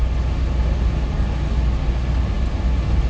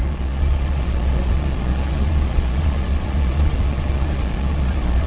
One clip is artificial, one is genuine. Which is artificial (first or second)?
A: second